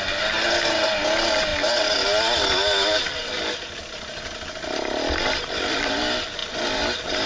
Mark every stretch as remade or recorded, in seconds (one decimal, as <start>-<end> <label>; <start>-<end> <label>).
0.0-7.3 recorded